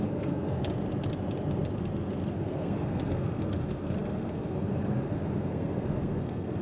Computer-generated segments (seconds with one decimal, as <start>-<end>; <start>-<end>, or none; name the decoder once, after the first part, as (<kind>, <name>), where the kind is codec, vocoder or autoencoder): 0.0-0.6 (codec, SNAC); 2.3-6.6

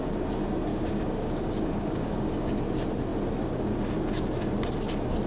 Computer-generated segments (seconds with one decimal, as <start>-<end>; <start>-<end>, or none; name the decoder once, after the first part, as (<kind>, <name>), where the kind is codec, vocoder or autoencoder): 0.7-2.6 (codec, DAC)

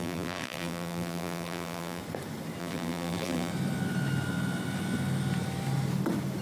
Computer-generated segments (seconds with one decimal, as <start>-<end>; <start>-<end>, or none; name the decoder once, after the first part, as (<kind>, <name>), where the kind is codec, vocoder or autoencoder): 0.0-2.0 (vocoder, BigVGAN v2); 2.6-3.5

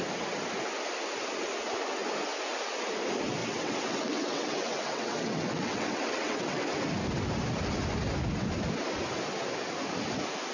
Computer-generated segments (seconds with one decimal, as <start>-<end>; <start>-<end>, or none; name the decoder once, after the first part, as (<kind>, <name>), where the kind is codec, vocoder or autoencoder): 3.4-6.6 (vocoder, WaveNeXt)